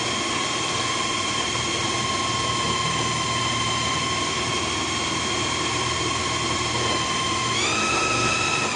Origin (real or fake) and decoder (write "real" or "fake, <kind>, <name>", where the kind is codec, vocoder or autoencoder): real